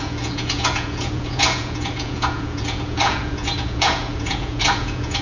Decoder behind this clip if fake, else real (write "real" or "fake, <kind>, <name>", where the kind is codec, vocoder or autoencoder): fake, vocoder, Vocos